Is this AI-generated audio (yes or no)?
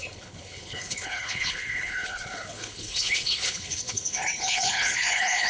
yes